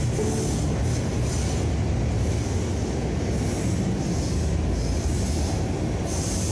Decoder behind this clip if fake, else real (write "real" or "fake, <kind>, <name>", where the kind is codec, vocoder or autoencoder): real